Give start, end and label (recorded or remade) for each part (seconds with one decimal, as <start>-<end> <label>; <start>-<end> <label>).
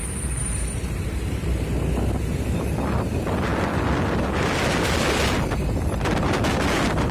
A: 0.0-1.0 remade; 1.0-7.1 recorded